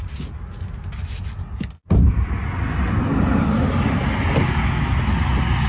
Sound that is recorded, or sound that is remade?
recorded